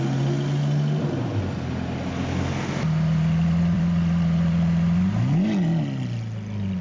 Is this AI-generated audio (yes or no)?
no